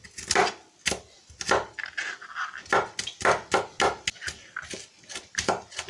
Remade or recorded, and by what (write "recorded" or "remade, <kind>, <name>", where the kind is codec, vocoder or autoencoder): recorded